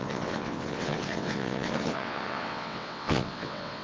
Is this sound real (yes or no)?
no